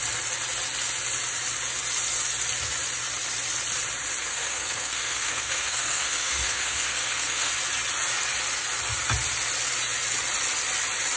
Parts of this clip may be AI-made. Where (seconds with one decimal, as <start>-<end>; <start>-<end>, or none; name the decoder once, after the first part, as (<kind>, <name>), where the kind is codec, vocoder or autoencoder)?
4.3-7.5 (codec, SNAC)